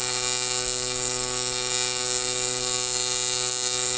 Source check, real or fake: fake